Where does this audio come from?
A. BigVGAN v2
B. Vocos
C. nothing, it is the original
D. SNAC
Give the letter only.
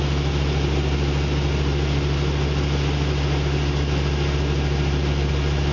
C